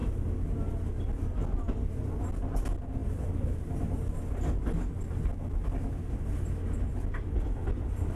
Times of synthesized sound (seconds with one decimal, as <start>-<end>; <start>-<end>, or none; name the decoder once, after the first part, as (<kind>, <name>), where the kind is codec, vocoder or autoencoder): none